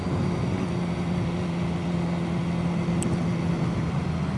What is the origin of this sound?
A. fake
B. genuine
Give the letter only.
B